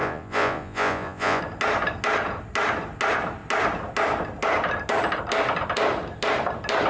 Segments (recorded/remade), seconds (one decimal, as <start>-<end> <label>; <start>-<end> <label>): 0.0-1.4 remade; 1.4-6.9 recorded